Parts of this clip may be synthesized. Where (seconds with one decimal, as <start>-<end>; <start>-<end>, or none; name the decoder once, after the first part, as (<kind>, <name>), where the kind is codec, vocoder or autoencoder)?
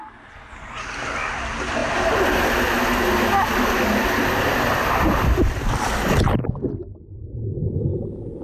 none